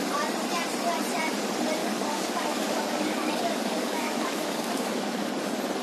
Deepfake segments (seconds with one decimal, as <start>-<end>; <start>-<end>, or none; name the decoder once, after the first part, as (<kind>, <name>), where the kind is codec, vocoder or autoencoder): 1.8-5.3 (codec, DAC)